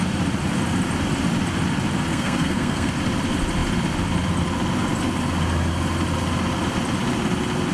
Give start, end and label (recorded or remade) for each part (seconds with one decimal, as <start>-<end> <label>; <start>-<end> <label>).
0.0-2.1 recorded; 2.1-2.9 remade; 2.9-7.7 recorded